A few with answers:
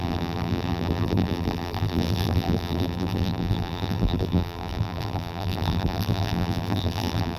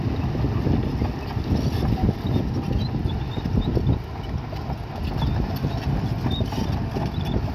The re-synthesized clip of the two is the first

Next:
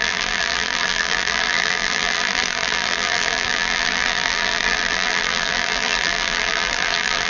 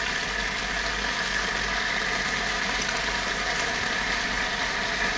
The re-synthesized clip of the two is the first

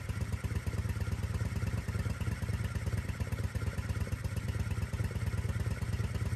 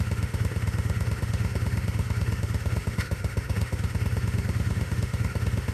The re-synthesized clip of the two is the second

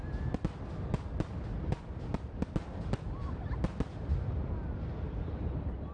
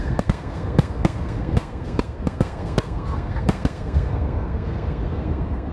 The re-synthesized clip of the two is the second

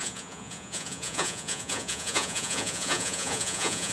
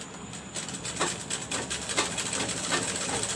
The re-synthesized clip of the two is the first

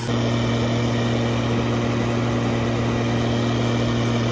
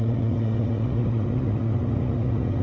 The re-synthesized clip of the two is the second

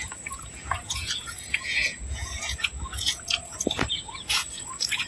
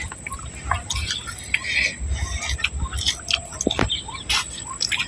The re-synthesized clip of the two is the first